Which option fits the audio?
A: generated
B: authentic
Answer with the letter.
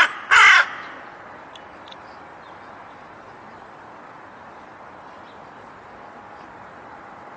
B